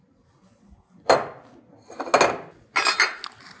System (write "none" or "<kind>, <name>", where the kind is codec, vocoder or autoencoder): none